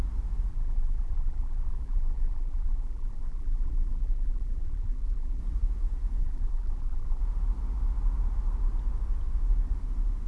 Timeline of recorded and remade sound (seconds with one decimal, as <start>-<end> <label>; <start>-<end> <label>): 0.0-0.5 recorded; 0.5-5.4 remade; 5.4-6.2 recorded; 6.2-7.2 remade; 7.2-10.3 recorded